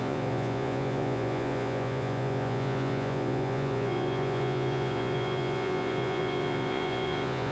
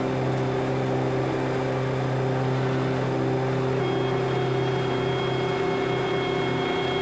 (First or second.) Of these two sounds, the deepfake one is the first